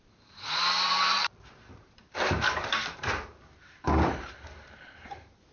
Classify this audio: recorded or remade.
remade